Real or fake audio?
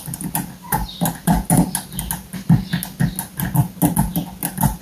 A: real